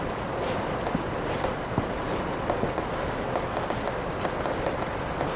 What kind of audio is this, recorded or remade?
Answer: recorded